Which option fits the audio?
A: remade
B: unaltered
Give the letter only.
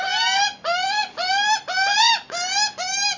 B